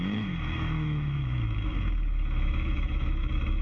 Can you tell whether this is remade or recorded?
remade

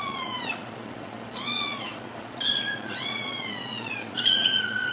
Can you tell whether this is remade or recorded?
remade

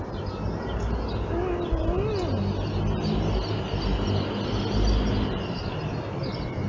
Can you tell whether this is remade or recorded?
recorded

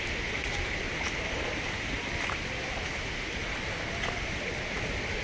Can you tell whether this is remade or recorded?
recorded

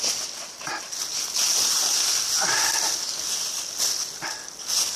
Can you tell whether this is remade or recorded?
recorded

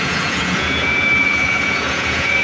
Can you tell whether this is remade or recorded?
remade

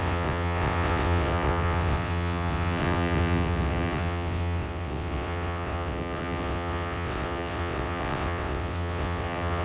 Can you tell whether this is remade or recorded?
remade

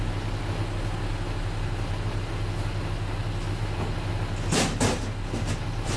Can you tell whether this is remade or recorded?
recorded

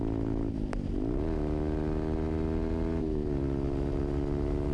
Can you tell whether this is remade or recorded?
recorded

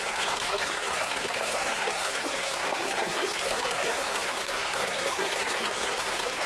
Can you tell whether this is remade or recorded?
remade